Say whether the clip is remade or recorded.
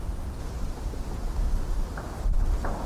recorded